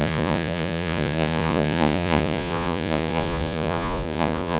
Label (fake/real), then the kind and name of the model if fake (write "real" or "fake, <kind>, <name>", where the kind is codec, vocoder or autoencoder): fake, vocoder, Vocos